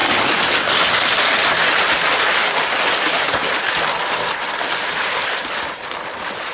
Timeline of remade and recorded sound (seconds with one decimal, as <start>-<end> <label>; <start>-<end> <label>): 0.0-6.5 recorded